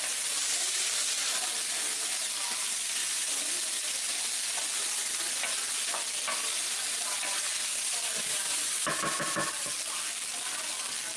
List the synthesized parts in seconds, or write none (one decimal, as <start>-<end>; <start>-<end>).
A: none